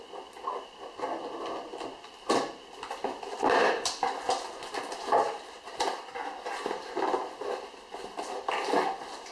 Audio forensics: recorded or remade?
recorded